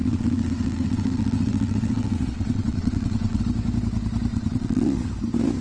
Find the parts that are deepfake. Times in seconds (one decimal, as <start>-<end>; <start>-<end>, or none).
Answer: 0.0-3.4; 4.3-5.1